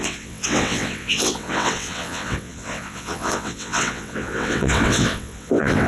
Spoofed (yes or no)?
yes